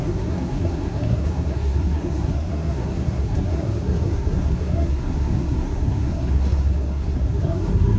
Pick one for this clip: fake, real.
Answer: fake